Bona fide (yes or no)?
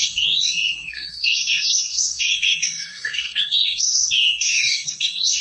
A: no